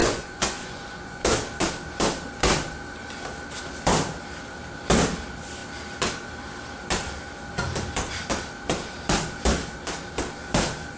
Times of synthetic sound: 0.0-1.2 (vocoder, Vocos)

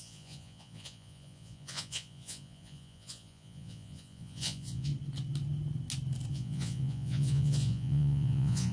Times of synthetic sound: 0.0-4.9 (vocoder, Vocos); 6.3-8.7

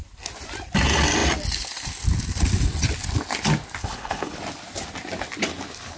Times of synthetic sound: 3.8-4.4 (codec, HILCodec)